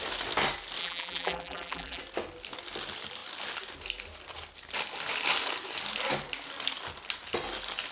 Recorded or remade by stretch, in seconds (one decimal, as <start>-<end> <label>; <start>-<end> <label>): 0.0-0.8 recorded; 0.8-2.0 remade; 2.0-7.9 recorded